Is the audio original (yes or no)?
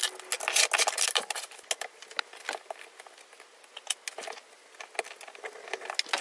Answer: yes